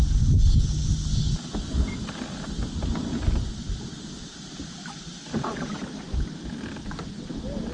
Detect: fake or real real